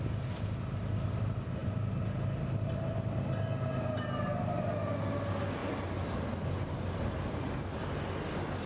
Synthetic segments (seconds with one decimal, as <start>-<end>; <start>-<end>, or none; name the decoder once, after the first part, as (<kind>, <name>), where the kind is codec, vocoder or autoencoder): none

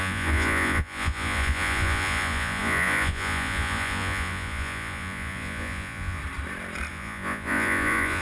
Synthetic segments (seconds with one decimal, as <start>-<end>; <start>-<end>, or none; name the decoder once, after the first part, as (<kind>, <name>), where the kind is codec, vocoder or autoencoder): 0.0-6.2 (vocoder, Vocos); 6.9-8.2